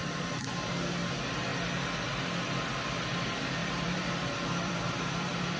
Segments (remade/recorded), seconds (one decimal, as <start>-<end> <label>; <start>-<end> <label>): 0.0-0.7 remade; 0.7-3.6 recorded; 3.6-5.6 remade